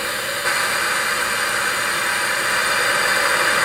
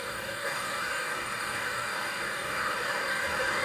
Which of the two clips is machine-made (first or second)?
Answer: second